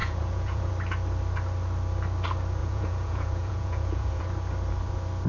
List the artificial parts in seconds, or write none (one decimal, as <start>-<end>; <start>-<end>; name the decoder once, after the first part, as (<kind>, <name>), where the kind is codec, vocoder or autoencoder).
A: 0.0-0.7 (vocoder, Vocos); 2.6-4.2